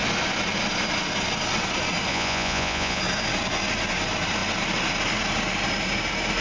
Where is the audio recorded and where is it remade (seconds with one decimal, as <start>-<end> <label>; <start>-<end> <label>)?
0.0-2.1 recorded; 2.1-3.0 remade; 3.0-6.4 recorded